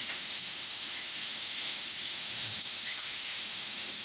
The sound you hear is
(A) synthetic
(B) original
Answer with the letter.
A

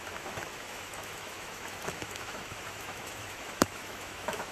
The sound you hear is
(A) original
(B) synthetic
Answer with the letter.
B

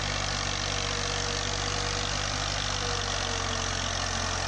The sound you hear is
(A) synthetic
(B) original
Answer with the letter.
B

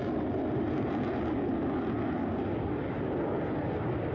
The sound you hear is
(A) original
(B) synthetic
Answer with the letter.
A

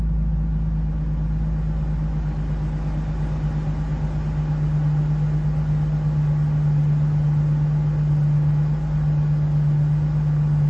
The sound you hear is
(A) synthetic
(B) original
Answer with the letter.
B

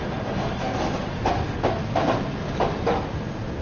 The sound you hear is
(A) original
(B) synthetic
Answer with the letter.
A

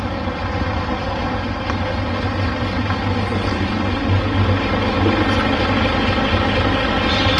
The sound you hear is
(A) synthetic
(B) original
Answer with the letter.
B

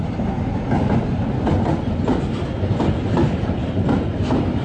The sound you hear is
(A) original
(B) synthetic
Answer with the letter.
A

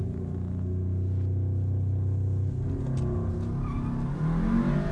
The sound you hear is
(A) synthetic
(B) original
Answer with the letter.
B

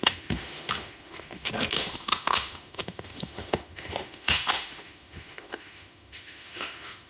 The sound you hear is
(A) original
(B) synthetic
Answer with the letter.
B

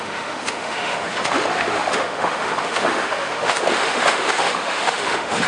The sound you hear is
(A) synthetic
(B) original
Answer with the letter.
A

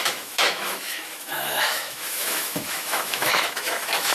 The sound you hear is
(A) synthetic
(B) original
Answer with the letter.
A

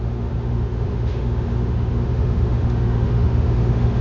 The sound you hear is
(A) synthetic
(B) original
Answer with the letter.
A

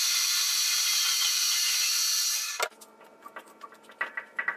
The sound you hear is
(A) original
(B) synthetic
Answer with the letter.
A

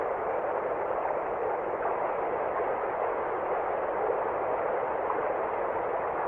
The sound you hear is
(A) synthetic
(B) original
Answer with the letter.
B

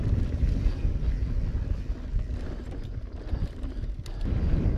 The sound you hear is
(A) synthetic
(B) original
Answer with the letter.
B